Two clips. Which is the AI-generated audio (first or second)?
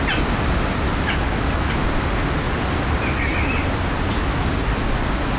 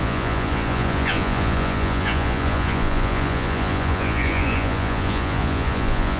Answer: second